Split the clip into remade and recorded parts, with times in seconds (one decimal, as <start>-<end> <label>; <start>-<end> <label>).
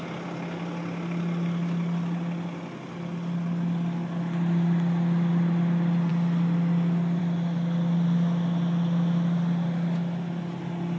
0.0-11.0 recorded